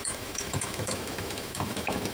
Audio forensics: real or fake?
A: fake